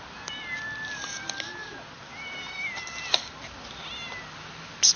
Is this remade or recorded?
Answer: recorded